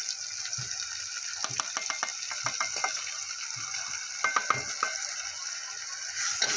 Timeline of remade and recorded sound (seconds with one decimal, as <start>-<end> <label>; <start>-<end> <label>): 0.0-6.6 recorded